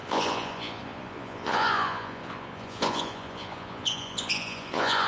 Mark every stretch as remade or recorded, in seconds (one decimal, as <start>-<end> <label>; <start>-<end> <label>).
0.0-5.1 remade